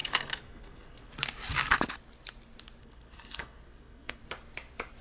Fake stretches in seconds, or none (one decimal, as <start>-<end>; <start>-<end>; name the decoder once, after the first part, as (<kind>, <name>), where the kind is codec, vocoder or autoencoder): 0.0-1.1 (codec, SNAC); 2.8-4.2